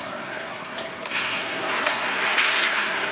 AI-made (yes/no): yes